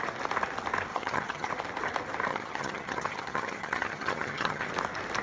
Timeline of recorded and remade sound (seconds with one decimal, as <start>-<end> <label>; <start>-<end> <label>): 0.0-0.9 recorded; 0.9-1.5 remade; 1.5-2.3 recorded; 2.3-4.7 remade; 4.7-5.2 recorded